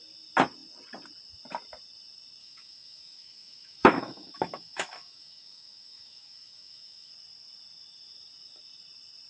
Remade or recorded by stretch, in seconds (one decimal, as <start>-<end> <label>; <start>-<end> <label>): 0.0-2.4 recorded; 2.4-7.1 remade; 7.1-9.3 recorded